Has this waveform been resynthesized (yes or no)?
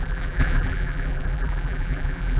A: yes